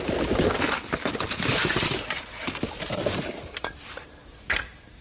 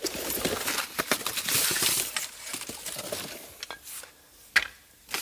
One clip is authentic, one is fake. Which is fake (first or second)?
first